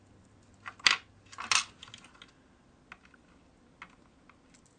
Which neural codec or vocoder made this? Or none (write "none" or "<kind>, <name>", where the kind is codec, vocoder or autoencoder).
none